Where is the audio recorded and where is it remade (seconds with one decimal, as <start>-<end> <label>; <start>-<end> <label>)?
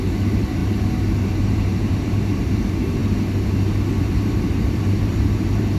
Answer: 0.0-3.0 remade; 3.0-4.0 recorded; 4.0-5.8 remade